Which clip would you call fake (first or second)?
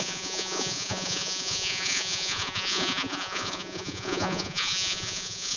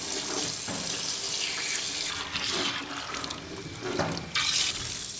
first